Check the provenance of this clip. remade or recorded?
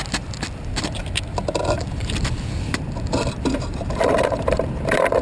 remade